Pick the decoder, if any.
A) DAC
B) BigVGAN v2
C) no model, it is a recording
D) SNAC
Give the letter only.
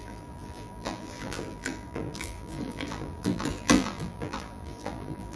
B